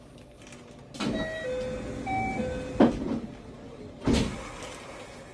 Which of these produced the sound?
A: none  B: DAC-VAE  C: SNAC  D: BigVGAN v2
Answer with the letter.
A